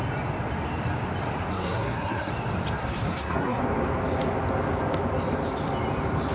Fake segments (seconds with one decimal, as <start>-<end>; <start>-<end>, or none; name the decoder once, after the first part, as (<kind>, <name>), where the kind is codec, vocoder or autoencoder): 1.5-2.3 (codec, SNAC); 2.8-3.6